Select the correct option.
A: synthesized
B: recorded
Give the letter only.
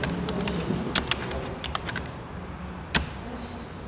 B